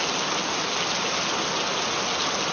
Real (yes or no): yes